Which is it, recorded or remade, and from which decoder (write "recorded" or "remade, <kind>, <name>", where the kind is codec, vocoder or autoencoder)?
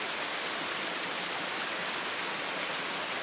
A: recorded